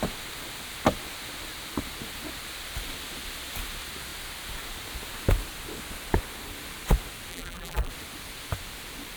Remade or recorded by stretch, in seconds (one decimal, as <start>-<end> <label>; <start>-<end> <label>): 0.0-7.3 recorded; 7.3-7.9 remade; 7.9-9.2 recorded